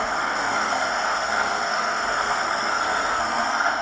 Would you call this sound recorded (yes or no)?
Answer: no